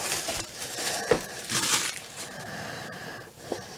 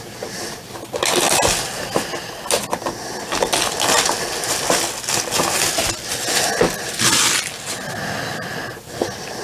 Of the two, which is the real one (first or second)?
second